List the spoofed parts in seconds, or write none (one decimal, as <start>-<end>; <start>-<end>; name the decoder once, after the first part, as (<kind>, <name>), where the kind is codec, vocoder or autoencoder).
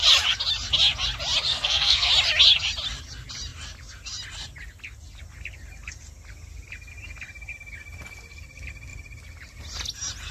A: 1.5-2.1 (codec, SNAC)